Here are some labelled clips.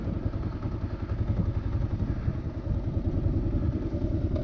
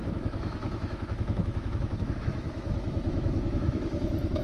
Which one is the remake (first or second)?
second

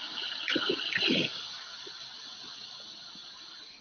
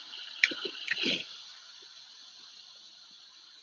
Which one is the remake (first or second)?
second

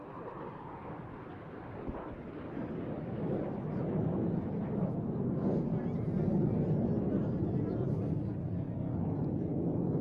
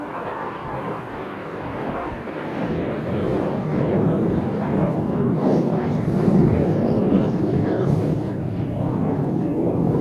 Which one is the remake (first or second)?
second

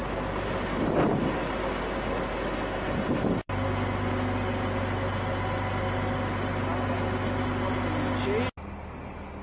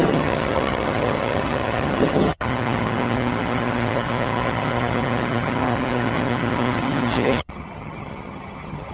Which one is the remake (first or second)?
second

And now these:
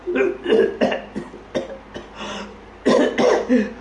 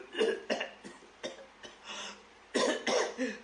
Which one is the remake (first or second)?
second